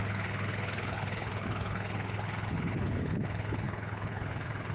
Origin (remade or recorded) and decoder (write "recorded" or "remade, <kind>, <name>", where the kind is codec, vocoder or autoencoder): remade, codec, HILCodec